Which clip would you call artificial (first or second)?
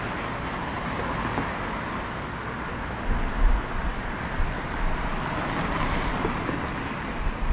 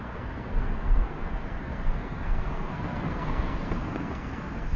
second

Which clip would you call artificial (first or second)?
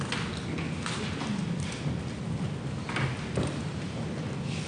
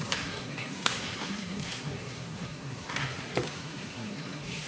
second